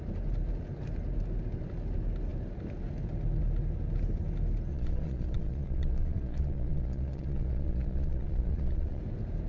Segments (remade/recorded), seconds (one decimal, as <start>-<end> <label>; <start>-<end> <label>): 0.0-4.7 recorded; 4.7-9.0 remade; 9.0-9.5 recorded